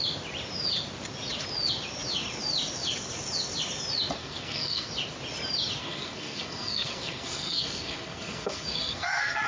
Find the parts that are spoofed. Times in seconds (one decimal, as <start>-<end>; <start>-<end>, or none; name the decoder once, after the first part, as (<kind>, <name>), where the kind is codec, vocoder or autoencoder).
4.2-4.9 (codec, SNAC); 5.8-9.5